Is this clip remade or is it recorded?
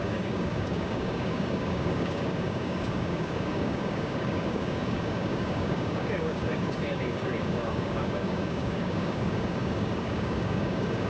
remade